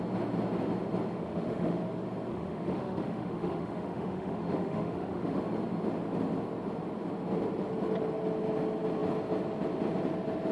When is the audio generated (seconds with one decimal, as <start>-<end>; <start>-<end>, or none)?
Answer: 1.1-1.8; 2.3-5.4